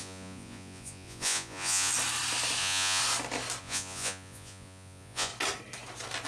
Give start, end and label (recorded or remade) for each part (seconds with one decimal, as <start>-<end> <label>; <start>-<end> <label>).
0.0-1.9 remade; 1.9-2.6 recorded; 2.6-3.0 remade; 3.0-3.6 recorded; 3.6-5.3 remade; 5.3-6.3 recorded